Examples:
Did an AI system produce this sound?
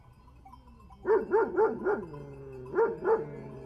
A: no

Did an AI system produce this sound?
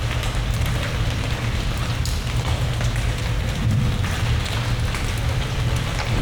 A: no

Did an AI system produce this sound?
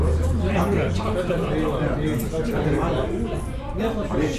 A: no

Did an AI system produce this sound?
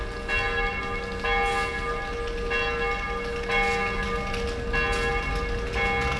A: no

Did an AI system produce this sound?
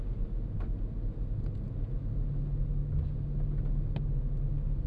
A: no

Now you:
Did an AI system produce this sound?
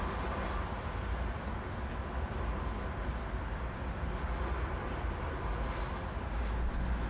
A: no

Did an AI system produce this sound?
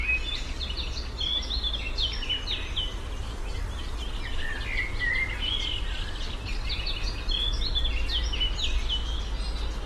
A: no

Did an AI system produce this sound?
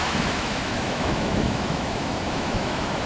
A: yes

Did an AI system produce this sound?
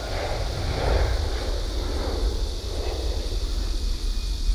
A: no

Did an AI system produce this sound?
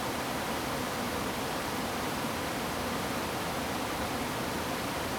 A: no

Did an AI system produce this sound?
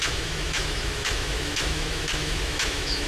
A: yes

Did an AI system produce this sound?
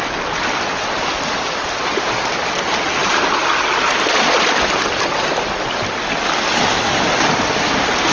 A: no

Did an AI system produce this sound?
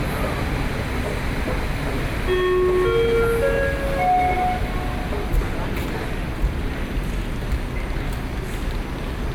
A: no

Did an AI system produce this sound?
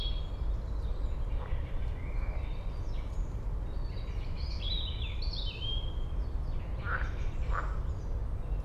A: no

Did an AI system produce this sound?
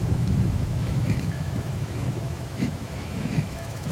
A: yes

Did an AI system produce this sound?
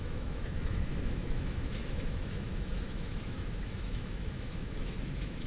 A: yes